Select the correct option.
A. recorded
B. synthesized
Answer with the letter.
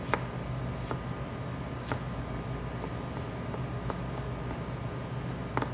A